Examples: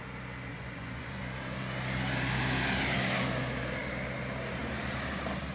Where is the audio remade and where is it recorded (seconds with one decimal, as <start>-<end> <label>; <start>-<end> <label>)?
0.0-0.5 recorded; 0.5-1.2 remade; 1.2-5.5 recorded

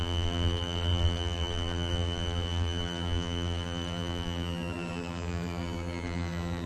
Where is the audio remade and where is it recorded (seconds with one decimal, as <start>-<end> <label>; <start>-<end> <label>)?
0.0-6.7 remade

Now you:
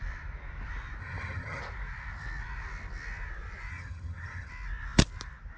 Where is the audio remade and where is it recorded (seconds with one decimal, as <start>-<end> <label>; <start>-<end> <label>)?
0.0-1.0 recorded; 1.0-1.6 remade; 1.6-3.7 recorded; 3.7-4.5 remade; 4.5-5.6 recorded